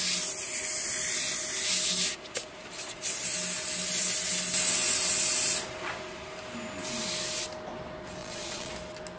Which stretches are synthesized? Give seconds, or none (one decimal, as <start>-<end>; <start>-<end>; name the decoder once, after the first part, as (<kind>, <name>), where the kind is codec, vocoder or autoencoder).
8.2-8.7 (vocoder, Vocos)